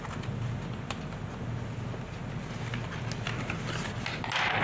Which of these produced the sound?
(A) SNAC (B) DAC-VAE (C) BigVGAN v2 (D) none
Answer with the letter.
D